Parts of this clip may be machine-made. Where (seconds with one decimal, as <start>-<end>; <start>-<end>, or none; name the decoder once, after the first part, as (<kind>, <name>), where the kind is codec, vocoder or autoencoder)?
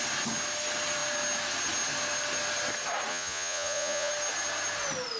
3.1-4.1 (vocoder, Vocos)